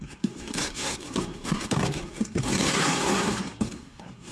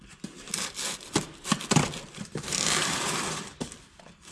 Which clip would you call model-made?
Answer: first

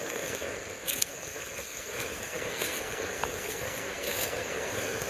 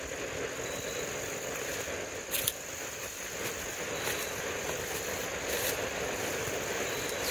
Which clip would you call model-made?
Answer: first